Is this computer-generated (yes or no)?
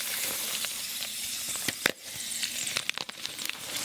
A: yes